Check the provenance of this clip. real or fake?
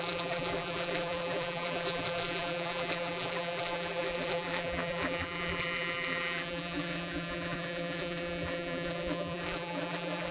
fake